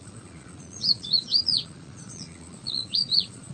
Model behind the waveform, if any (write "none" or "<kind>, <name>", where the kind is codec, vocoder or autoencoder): vocoder, Vocos